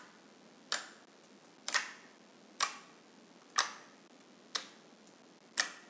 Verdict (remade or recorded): recorded